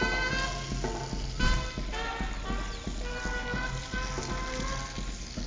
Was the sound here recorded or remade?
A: recorded